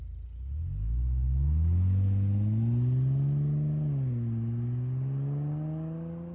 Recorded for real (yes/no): yes